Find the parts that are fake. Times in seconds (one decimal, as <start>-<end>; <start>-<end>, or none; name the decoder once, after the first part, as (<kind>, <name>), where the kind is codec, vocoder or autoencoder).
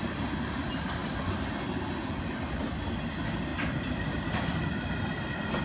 none